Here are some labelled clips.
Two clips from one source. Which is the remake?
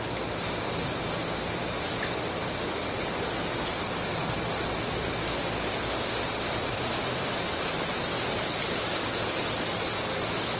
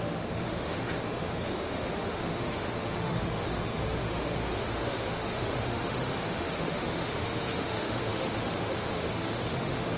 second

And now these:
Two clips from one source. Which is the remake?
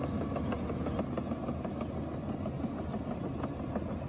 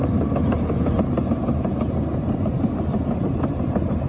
second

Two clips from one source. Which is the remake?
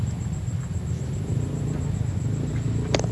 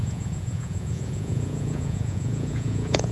second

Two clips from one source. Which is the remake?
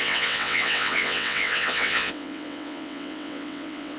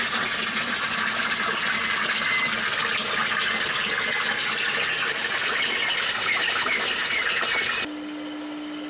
first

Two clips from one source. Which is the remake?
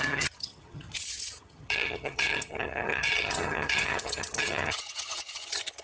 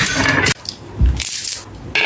first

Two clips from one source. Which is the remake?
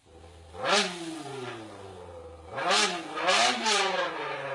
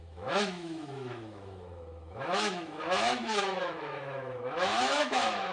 second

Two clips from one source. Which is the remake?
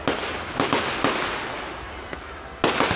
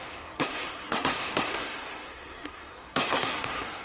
second